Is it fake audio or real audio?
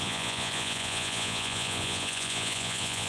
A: fake